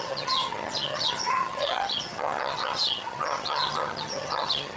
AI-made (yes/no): yes